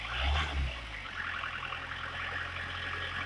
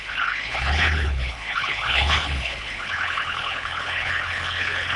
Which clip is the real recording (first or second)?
first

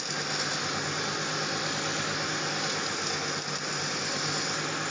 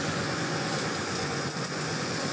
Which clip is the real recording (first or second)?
first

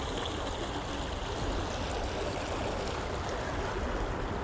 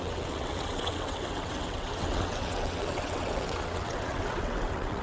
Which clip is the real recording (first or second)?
first